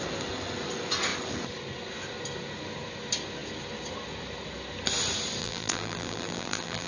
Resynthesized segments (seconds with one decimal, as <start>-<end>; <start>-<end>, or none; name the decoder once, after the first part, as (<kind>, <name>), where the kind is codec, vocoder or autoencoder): 5.4-6.9 (vocoder, BigVGAN v2)